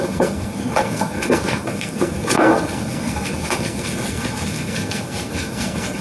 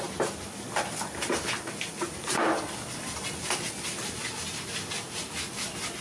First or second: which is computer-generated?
first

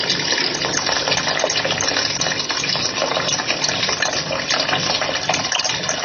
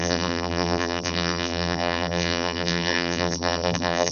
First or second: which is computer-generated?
second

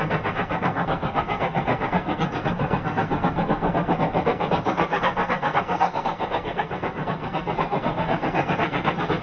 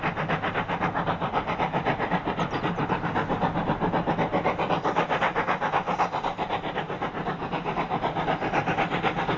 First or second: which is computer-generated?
first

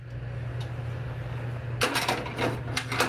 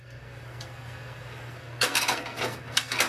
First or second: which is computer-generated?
second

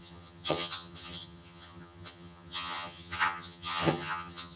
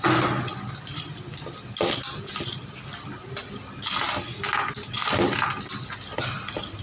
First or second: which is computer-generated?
first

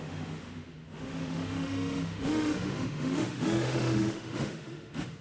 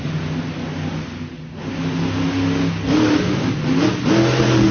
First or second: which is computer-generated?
first